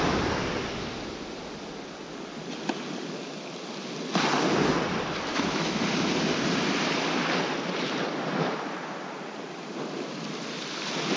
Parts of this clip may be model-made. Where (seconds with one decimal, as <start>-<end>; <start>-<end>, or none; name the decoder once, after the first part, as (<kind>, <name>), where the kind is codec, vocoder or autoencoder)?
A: 5.3-5.8 (autoencoder, DAC-VAE)